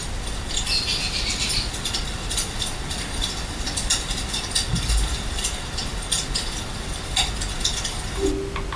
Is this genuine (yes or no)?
yes